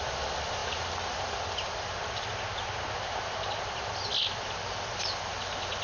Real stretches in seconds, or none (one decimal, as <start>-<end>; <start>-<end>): 0.0-5.8